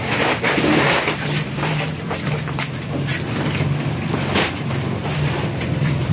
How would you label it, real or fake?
fake